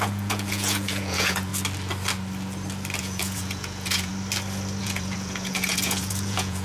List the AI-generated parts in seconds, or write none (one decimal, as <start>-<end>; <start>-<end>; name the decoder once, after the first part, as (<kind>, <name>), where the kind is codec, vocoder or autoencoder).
0.0-1.5 (vocoder, Vocos); 3.0-4.1; 4.8-6.6